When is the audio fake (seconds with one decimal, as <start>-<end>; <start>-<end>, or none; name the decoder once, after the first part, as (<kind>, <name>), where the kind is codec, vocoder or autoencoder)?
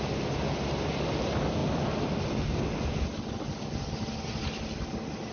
none